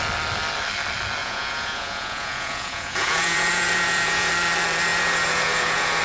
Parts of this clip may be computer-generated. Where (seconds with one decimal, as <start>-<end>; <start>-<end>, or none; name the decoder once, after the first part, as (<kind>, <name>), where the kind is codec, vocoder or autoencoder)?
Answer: 1.2-4.3 (vocoder, Vocos); 4.9-6.0